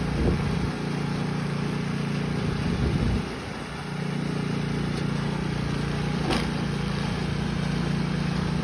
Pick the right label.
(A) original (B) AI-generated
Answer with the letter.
A